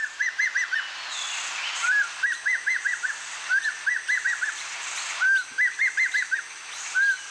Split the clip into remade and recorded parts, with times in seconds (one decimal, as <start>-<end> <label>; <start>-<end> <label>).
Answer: 0.0-7.3 recorded